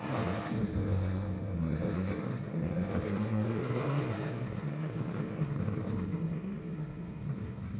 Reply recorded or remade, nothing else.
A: remade